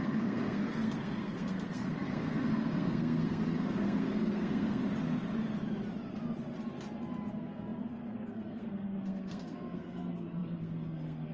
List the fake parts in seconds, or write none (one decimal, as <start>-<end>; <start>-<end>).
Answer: 0.0-4.8; 7.3-11.3